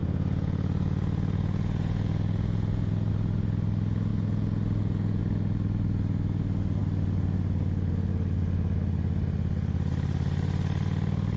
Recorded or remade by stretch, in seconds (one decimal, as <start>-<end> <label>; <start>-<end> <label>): 0.0-3.1 remade; 3.1-4.1 recorded; 4.1-5.2 remade; 5.2-11.4 recorded